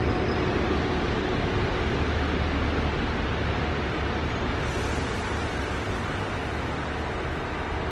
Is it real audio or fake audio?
real